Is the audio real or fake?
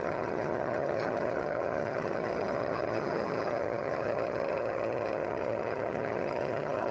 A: fake